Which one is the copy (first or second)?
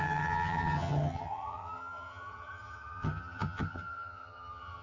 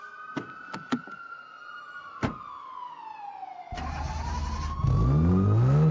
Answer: first